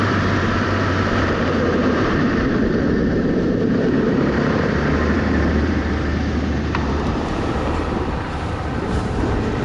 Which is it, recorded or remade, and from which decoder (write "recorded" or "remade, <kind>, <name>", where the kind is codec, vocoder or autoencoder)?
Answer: remade, vocoder, BigVGAN v2